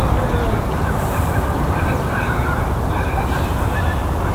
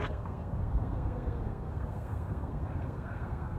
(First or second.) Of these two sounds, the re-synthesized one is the second